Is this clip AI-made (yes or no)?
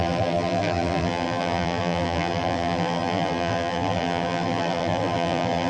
yes